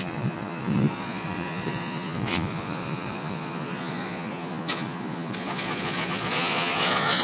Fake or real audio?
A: fake